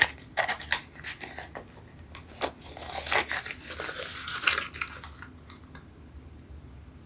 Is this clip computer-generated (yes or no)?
no